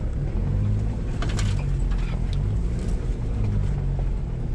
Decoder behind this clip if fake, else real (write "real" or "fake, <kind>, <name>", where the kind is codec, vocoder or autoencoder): real